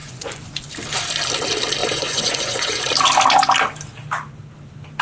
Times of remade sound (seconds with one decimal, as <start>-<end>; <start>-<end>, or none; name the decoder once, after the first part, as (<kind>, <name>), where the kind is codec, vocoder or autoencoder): 0.0-0.7 (vocoder, Vocos); 1.8-2.8